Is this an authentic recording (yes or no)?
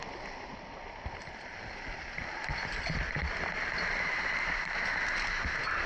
yes